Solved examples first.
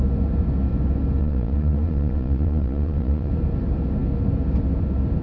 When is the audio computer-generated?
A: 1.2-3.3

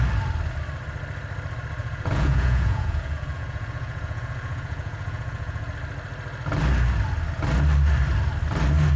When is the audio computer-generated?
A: 1.8-5.7